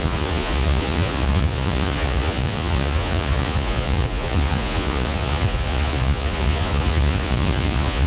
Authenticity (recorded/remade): remade